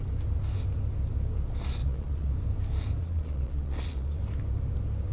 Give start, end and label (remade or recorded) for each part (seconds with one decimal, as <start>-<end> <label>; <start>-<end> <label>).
0.0-1.8 recorded; 1.8-2.3 remade; 2.3-3.0 recorded; 3.0-4.2 remade; 4.2-5.1 recorded